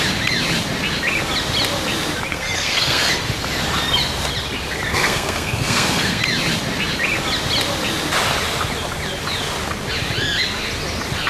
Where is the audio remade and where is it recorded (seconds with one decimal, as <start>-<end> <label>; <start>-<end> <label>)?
0.0-2.3 recorded; 2.3-3.1 remade; 3.1-4.9 recorded; 4.9-6.2 remade; 6.2-11.3 recorded